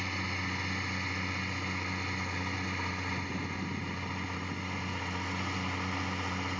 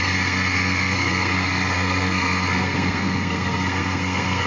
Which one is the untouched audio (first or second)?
first